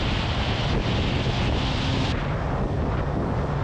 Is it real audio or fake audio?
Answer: real